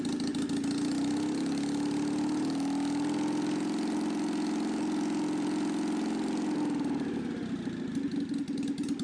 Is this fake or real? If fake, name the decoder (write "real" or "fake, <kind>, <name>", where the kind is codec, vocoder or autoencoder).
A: real